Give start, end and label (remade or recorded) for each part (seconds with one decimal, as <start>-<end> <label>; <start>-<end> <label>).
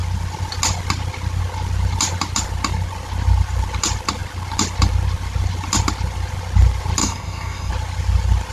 0.0-7.0 recorded; 7.0-7.7 remade; 7.7-8.5 recorded